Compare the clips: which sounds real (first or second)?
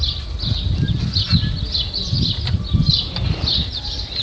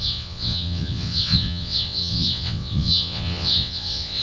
first